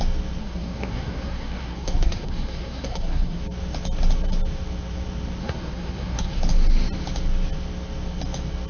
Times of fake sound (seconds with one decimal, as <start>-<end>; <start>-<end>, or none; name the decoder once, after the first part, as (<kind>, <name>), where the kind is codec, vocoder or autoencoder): 0.4-3.4 (codec, SNAC); 5.4-6.4